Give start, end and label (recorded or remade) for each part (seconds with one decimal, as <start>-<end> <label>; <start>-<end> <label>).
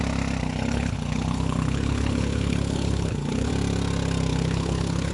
0.0-0.4 recorded; 0.4-3.5 remade; 3.5-4.3 recorded; 4.3-5.1 remade